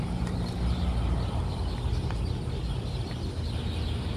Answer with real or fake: real